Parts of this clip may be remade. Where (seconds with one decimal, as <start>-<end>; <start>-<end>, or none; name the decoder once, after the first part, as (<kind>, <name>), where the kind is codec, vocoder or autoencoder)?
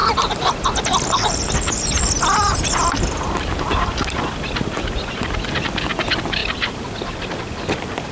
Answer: none